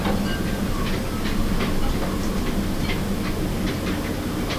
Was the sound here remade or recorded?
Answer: recorded